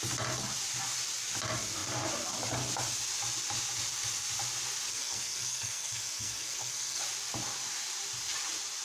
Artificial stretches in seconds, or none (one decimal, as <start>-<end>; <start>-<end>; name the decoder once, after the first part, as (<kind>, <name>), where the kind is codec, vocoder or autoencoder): 4.9-7.0 (codec, SNAC)